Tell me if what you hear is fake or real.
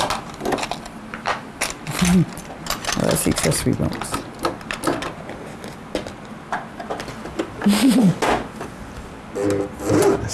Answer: real